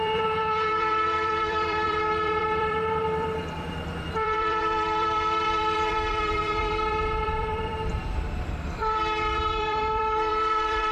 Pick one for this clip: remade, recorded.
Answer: remade